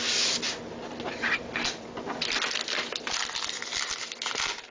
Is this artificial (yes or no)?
no